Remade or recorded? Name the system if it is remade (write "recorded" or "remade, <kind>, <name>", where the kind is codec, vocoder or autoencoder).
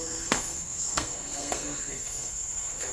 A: remade, codec, SNAC